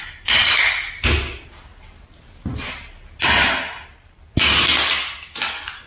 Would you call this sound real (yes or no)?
yes